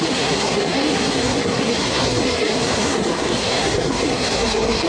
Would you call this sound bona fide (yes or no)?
no